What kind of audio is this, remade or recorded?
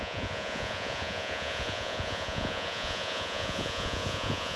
remade